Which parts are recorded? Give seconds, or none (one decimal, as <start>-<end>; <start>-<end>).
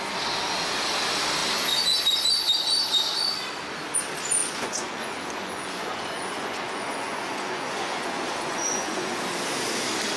0.0-4.4; 9.2-10.2